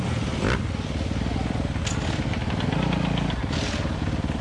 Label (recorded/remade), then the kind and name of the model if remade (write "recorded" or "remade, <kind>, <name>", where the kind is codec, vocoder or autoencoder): recorded